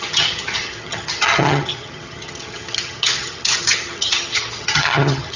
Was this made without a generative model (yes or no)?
no